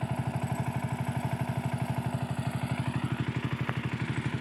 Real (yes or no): yes